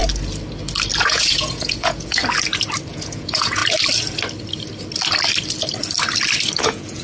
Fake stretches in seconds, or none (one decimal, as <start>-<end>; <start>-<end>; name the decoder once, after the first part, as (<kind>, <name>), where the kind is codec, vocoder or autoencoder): 1.0-2.2 (vocoder, Vocos); 2.9-3.6; 6.6-7.0

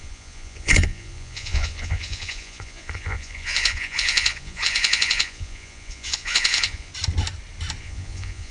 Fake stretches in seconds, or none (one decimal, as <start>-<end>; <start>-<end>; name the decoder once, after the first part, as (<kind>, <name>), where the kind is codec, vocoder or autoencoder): 0.0-6.9 (vocoder, Vocos); 7.8-8.5

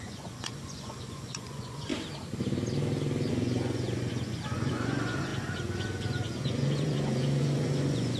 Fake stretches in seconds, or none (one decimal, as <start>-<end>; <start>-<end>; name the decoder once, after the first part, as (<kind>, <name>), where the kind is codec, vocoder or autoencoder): 0.0-1.9 (vocoder, Vocos); 3.3-8.2

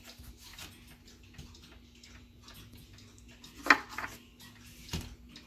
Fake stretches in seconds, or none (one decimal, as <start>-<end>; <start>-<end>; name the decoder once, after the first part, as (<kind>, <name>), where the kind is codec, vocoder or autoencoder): none

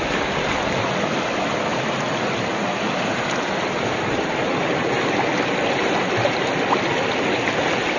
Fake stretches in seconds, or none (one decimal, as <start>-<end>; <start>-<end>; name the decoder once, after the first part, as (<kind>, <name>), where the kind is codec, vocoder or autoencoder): none

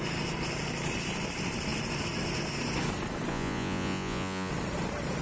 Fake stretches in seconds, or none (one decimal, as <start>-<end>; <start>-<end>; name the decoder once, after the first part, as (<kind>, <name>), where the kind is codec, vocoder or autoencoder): 3.3-4.5 (vocoder, Vocos)

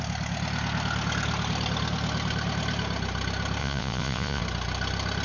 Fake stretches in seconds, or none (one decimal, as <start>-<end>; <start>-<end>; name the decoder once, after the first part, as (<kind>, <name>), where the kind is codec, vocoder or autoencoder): 3.6-4.4 (vocoder, Vocos)

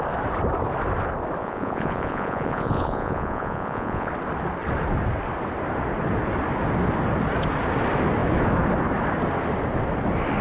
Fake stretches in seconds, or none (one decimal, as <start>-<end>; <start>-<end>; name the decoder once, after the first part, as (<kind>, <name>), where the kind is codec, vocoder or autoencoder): 1.4-4.1 (vocoder, Vocos)